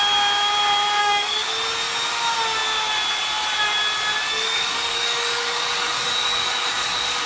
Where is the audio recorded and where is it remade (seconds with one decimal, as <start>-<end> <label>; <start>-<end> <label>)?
0.0-1.0 recorded; 1.0-1.5 remade; 1.5-4.3 recorded; 4.3-7.3 remade